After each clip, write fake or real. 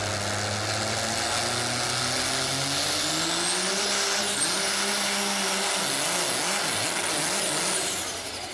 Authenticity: real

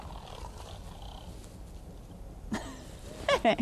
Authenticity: real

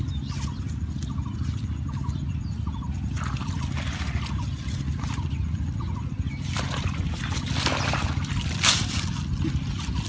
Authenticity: real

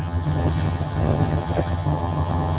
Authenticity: fake